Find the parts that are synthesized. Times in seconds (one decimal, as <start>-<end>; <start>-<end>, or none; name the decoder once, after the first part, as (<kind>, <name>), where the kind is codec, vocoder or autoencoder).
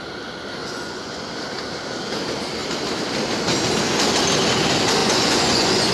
0.6-1.3 (vocoder, Vocos); 5.0-5.9